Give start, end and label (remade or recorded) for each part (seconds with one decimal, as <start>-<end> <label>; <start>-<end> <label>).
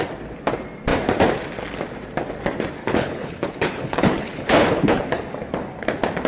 0.0-2.8 recorded; 2.8-5.0 remade; 5.0-6.3 recorded